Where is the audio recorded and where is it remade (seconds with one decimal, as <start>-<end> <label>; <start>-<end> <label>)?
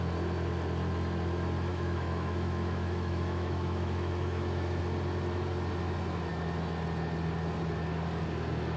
0.0-1.7 recorded; 1.7-4.8 remade; 4.8-8.8 recorded